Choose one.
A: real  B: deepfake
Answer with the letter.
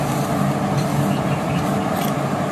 A